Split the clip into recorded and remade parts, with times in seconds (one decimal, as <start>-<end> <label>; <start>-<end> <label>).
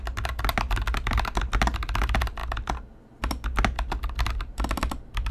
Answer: 0.0-5.3 recorded